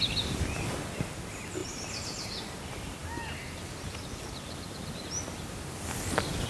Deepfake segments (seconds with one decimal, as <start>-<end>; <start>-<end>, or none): none